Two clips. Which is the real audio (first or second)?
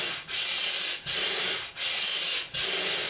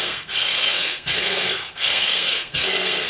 first